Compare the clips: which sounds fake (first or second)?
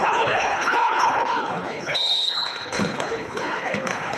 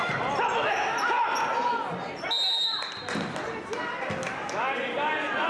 first